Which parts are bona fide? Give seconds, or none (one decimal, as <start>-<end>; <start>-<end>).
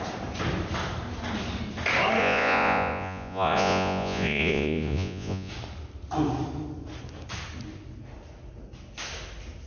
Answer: 0.0-2.2; 5.5-9.7